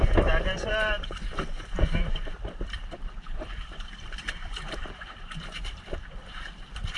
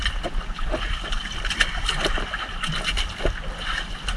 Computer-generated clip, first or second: first